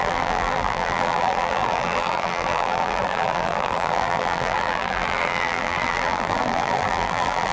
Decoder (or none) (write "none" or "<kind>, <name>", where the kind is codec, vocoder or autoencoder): vocoder, BigVGAN v2